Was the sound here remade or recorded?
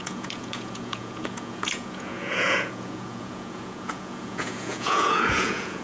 remade